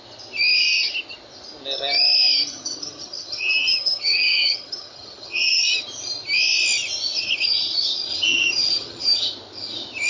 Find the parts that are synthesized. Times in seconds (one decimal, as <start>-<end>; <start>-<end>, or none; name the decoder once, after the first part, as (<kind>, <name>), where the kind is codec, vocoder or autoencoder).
2.5-5.8 (vocoder, HiFi-GAN); 8.1-9.3